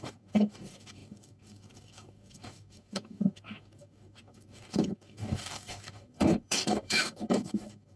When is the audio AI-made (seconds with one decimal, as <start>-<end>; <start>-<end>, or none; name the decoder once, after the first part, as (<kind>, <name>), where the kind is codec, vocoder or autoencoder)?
0.0-8.0 (codec, DAC)